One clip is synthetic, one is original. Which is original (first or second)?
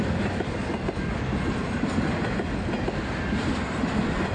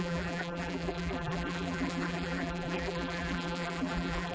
first